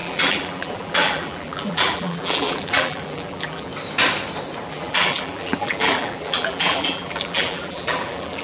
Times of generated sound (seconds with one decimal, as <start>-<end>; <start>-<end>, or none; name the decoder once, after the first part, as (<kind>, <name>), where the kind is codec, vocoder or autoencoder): 0.0-3.7 (vocoder, BigVGAN v2); 4.7-8.4